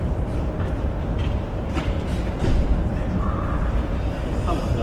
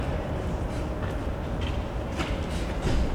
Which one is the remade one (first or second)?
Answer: first